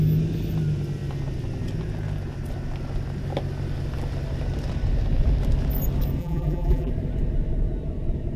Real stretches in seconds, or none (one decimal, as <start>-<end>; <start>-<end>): 0.0-6.2; 6.9-8.4